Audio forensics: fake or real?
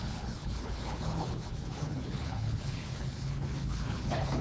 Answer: fake